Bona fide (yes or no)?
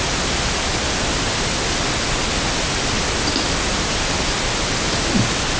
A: yes